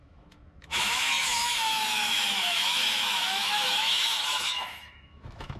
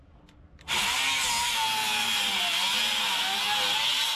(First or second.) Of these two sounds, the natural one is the second